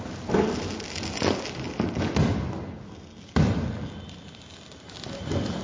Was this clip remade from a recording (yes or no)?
no